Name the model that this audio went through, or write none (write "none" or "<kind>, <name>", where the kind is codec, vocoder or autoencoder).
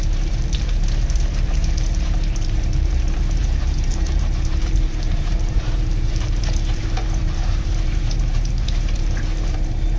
vocoder, BigVGAN v2